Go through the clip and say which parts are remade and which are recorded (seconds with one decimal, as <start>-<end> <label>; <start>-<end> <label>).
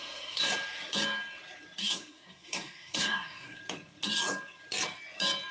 0.0-0.5 remade; 0.5-1.8 recorded; 1.8-3.6 remade; 3.6-5.5 recorded